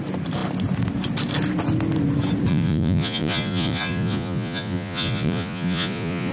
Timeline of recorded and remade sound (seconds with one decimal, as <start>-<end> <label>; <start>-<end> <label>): 0.0-2.5 recorded; 2.5-6.3 remade